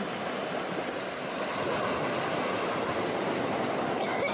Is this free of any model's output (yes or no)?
yes